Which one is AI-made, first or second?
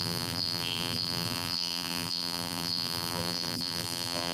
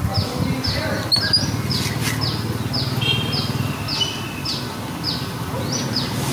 first